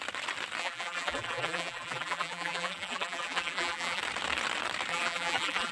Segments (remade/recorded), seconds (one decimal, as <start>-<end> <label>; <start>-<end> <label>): 0.0-0.6 recorded; 0.6-4.0 remade; 4.0-4.9 recorded; 4.9-5.7 remade